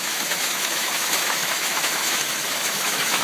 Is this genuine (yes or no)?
no